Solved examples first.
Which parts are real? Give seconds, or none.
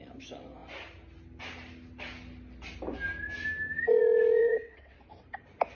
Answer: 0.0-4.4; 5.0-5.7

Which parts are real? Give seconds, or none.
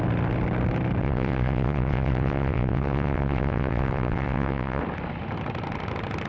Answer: 0.0-1.0; 4.8-6.3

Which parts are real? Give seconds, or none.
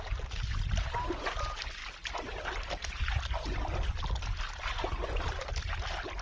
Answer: 0.0-6.2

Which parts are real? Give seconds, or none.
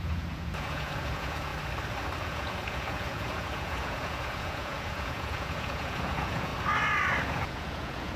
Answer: 1.5-2.2; 6.5-7.3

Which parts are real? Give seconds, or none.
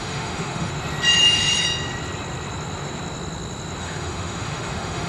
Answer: 0.7-3.8